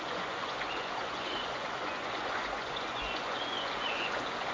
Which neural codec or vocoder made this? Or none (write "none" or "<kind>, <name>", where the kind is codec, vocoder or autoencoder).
vocoder, Vocos